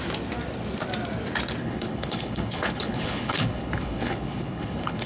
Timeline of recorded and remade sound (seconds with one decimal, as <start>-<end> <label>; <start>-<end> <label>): 0.0-1.6 recorded; 1.6-5.1 remade